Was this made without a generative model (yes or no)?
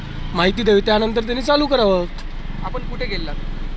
yes